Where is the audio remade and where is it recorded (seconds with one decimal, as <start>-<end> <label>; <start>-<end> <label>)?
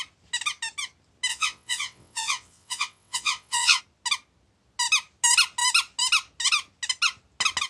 0.0-1.3 recorded; 1.3-3.8 remade; 3.8-7.7 recorded